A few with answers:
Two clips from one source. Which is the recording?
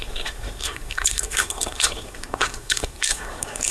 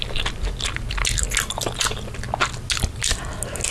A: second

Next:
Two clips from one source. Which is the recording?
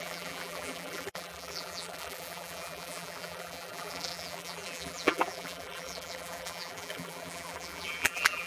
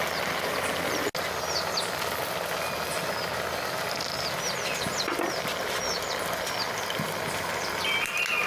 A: second